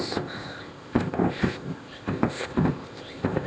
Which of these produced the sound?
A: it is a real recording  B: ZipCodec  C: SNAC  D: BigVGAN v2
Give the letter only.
B